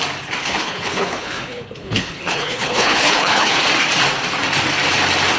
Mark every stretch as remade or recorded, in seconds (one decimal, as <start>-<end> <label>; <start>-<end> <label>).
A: 0.0-0.4 recorded; 0.4-3.6 remade; 3.6-5.4 recorded